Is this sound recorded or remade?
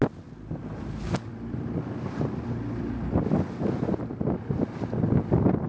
recorded